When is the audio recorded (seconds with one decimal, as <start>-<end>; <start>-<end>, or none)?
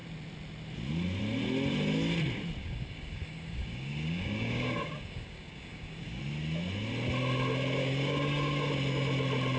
0.0-2.6; 6.2-7.8; 8.7-9.6